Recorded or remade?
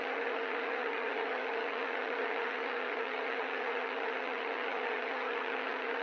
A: remade